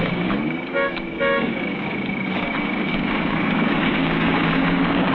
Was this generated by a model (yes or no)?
yes